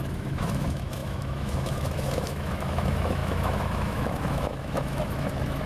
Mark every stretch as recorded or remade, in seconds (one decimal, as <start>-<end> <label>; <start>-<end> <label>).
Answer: 0.0-5.7 remade